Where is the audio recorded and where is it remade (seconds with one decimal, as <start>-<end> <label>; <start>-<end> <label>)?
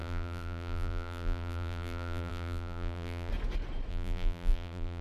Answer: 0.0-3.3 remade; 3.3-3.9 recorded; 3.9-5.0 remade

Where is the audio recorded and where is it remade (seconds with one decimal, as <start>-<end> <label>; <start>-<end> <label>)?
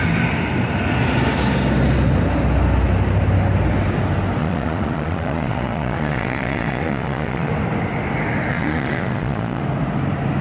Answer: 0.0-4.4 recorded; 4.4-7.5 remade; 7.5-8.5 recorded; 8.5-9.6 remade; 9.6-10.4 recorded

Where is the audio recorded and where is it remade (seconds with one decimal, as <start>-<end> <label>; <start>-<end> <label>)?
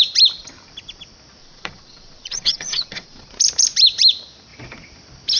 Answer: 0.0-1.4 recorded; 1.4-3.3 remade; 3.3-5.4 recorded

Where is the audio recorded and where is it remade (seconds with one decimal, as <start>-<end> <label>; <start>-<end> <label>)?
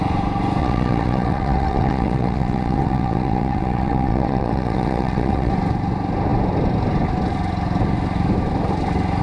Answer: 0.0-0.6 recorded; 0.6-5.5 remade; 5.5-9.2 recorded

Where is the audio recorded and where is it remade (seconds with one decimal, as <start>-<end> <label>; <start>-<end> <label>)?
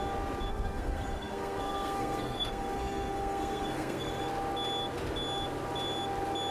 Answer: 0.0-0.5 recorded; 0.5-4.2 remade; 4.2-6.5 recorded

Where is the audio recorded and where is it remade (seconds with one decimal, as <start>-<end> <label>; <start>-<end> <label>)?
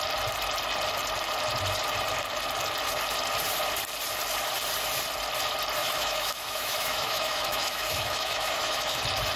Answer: 0.0-5.8 recorded; 5.8-9.0 remade; 9.0-9.4 recorded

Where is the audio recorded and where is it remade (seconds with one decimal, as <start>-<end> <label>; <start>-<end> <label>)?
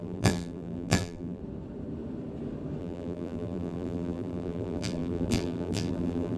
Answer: 0.0-1.4 remade; 1.4-2.8 recorded; 2.8-6.4 remade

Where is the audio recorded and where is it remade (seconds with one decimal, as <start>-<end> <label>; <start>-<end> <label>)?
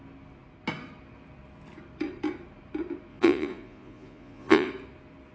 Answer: 0.0-3.1 recorded; 3.1-4.7 remade; 4.7-5.3 recorded